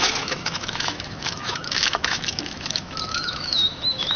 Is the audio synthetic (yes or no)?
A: yes